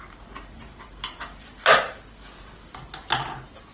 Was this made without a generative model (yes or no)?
yes